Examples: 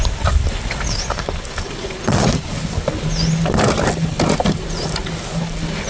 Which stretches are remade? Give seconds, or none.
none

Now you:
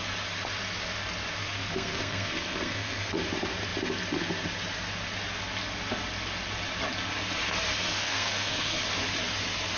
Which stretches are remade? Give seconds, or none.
1.4-3.1; 7.7-8.8

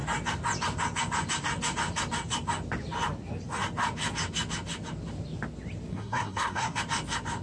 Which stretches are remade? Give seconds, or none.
5.9-6.8

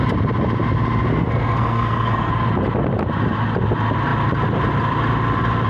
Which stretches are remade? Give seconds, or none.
1.1-2.3

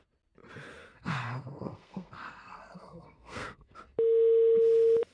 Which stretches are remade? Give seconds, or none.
0.8-3.8